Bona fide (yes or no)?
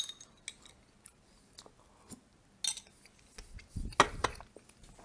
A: yes